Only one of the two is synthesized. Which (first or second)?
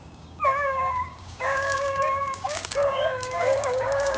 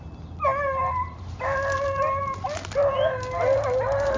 first